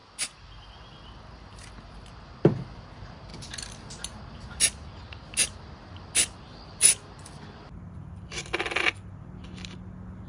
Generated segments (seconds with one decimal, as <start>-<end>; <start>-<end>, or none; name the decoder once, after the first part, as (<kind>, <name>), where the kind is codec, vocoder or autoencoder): none